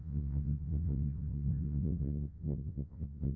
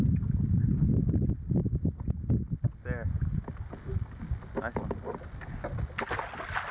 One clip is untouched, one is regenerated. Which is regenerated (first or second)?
first